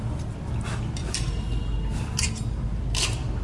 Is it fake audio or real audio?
real